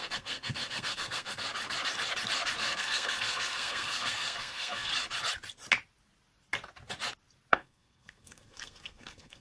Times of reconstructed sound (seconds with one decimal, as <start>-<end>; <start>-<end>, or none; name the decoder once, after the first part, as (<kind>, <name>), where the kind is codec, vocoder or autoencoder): 0.0-1.4 (codec, SNAC); 2.6-4.9; 7.5-9.4